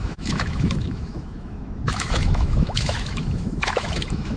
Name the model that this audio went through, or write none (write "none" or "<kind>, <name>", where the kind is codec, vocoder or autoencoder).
autoencoder, DAC-VAE